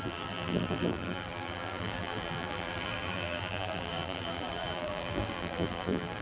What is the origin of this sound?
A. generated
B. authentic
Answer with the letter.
A